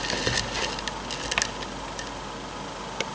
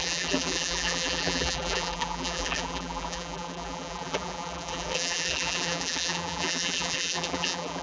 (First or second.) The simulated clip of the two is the second